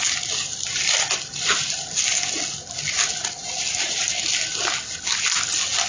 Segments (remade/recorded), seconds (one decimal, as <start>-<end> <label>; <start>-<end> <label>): 0.0-5.9 recorded